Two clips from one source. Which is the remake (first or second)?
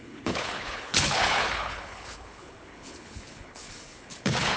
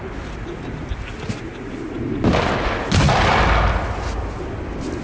first